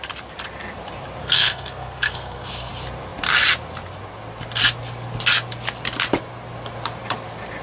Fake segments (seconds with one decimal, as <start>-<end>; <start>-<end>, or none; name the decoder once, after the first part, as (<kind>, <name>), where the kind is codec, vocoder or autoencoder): 1.2-2.7 (codec, SNAC)